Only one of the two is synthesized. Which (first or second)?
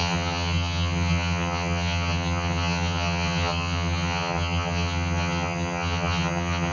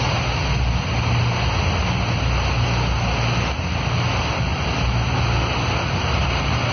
first